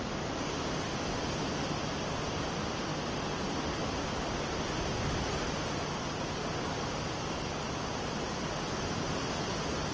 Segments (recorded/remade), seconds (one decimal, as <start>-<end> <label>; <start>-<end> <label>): 0.0-9.9 recorded